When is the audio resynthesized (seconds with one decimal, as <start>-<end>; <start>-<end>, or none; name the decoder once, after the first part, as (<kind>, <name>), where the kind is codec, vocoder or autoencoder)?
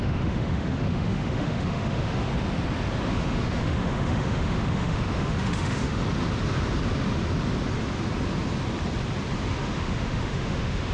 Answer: 0.0-2.3 (autoencoder, DAC-VAE); 3.1-6.0; 9.6-10.9